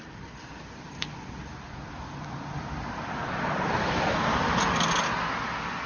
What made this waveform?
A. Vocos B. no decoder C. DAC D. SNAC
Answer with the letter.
B